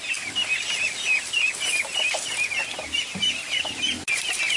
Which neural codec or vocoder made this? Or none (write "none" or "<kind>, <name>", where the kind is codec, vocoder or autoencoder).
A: none